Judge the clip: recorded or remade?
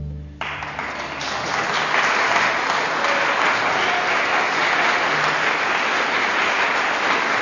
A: recorded